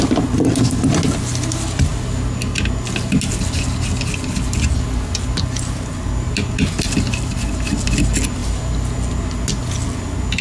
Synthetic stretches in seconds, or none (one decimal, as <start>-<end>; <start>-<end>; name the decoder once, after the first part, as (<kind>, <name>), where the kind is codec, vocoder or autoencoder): none